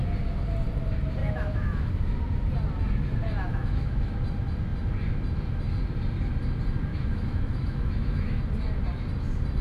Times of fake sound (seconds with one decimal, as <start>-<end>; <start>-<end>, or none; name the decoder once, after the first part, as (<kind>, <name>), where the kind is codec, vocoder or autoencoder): 1.2-1.9 (autoencoder, DAC-VAE); 3.5-4.1; 6.9-8.4